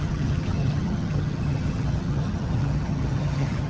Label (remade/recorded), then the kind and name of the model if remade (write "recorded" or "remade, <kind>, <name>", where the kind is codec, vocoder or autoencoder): remade, vocoder, HiFi-GAN